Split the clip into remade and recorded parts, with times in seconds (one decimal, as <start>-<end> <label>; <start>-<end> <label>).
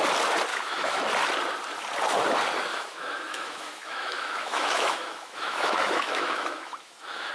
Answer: 0.0-0.5 recorded; 0.5-1.0 remade; 1.0-2.7 recorded; 2.7-7.3 remade